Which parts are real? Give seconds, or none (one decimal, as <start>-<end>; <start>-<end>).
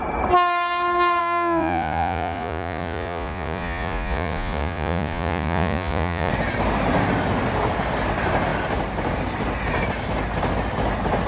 0.0-1.2; 6.3-11.3